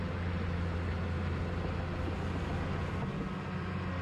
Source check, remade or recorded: recorded